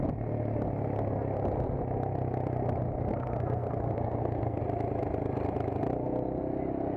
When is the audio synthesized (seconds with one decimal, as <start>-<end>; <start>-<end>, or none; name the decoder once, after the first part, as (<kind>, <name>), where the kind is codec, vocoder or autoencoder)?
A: 3.1-4.6 (codec, SNAC)